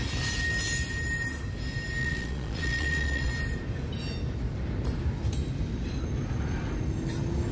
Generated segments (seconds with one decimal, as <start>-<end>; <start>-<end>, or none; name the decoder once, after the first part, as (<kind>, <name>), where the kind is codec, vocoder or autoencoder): 2.0-3.3 (vocoder, Vocos)